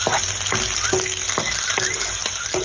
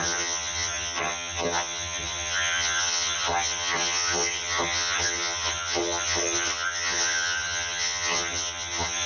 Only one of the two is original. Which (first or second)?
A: first